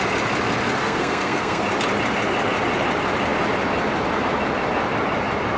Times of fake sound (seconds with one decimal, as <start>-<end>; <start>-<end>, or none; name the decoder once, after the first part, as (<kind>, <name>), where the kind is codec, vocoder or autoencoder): 0.8-1.6 (codec, SNAC)

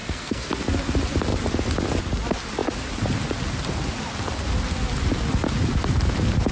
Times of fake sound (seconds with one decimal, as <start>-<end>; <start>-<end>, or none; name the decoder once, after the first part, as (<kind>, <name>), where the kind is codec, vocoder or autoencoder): 0.0-0.5 (codec, SNAC)

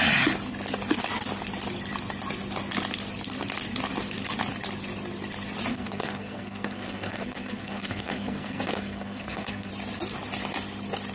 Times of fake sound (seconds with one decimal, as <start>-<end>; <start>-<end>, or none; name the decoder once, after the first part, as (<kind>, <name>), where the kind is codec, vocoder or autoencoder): 5.7-9.7 (codec, SNAC)

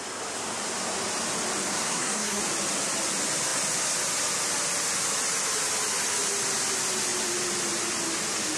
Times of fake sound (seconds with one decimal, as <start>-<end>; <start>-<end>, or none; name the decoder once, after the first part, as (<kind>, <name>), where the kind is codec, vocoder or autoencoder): 1.7-2.4 (codec, SNAC)

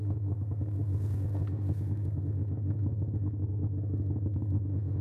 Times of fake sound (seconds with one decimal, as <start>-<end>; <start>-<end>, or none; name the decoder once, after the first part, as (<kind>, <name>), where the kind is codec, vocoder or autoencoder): 0.0-5.0 (codec, SNAC)